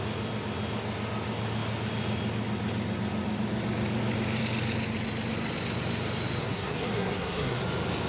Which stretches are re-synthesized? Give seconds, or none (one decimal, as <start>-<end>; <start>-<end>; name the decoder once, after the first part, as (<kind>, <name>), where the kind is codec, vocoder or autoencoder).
6.4-7.6 (codec, SNAC)